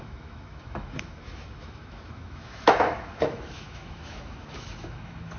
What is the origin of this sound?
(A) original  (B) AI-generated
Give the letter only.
B